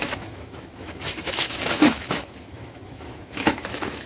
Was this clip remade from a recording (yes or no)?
yes